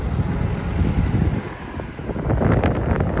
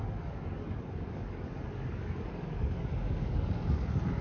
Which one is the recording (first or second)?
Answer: first